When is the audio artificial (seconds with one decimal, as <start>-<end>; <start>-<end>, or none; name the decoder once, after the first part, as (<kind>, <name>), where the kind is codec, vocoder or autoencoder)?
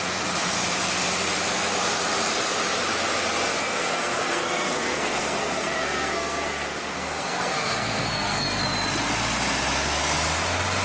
3.5-8.6 (codec, SNAC)